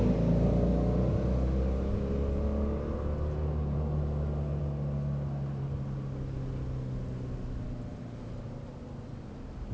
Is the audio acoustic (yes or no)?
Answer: yes